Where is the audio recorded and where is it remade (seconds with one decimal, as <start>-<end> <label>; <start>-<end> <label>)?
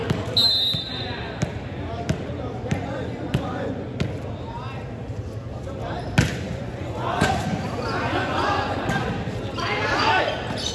0.0-2.8 recorded; 2.8-4.0 remade; 4.0-6.3 recorded; 6.3-7.3 remade; 7.3-8.2 recorded; 8.2-8.9 remade; 8.9-10.7 recorded